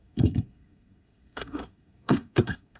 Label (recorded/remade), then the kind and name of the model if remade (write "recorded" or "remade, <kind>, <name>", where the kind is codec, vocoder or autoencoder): remade, codec, SNAC